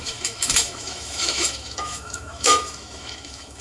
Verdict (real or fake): fake